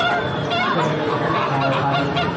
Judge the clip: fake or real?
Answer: real